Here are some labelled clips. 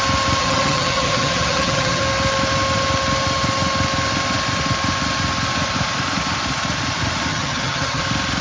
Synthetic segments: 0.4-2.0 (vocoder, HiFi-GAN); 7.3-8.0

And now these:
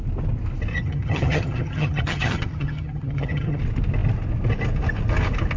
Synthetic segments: 0.7-3.6 (vocoder, HiFi-GAN)